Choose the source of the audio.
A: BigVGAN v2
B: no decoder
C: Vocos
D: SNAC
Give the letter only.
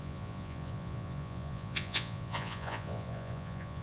C